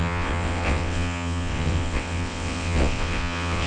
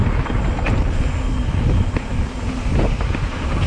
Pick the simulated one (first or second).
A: first